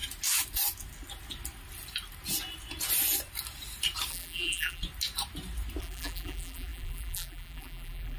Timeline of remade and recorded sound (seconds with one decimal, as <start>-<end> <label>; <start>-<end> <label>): 0.0-4.1 recorded; 4.1-4.8 remade; 4.8-5.8 recorded; 5.8-8.2 remade